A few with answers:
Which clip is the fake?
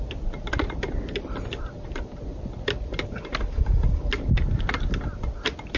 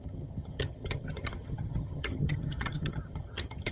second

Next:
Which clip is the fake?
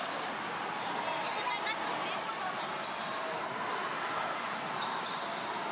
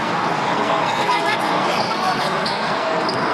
second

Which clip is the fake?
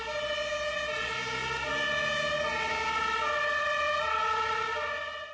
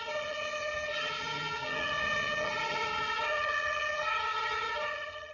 second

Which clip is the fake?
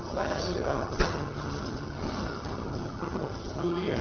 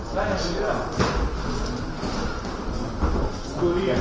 first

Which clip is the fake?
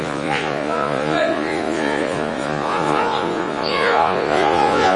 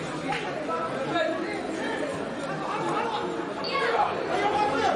first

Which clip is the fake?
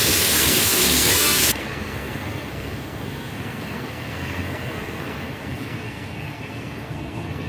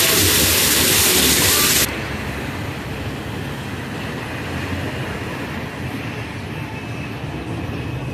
first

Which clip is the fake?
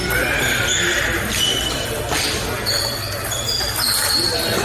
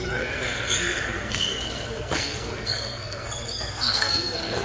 second